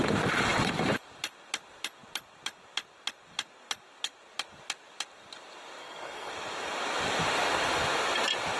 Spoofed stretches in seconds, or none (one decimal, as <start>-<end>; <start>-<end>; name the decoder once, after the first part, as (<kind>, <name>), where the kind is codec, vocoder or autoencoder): 5.8-6.3 (codec, SNAC)